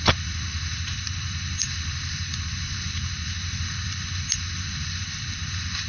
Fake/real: fake